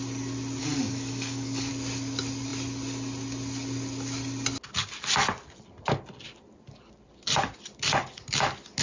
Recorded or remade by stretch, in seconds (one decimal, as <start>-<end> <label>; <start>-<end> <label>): 0.0-0.6 recorded; 0.6-1.7 remade; 1.7-8.8 recorded